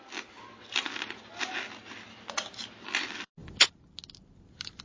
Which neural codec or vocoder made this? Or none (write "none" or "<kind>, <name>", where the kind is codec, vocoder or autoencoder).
none